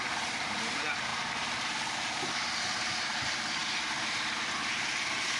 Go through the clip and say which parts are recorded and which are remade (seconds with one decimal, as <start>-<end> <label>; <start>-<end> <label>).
0.0-5.4 recorded